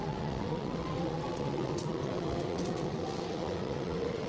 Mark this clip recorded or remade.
remade